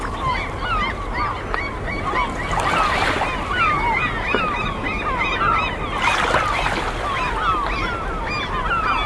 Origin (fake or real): real